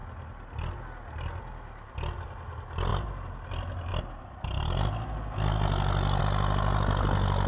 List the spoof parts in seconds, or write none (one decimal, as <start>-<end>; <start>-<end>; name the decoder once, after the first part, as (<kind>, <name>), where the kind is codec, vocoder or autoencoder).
none